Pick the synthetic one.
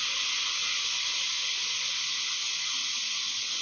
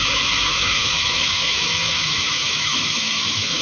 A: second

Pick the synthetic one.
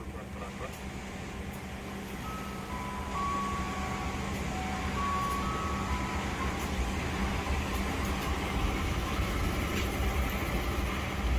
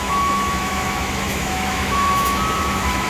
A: second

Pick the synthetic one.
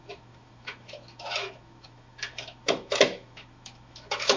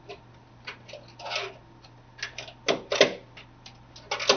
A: first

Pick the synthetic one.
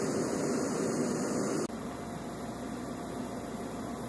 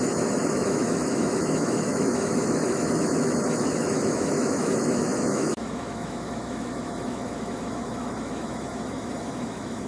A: second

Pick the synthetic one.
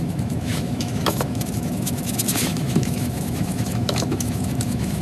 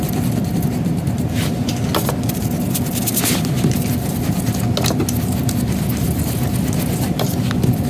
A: first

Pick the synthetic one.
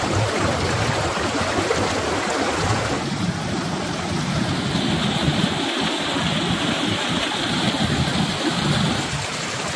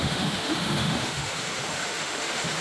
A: second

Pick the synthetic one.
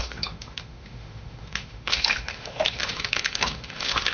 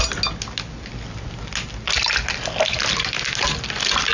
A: first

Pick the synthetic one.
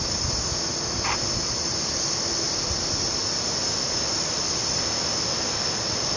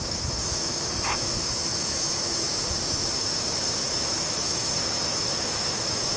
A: second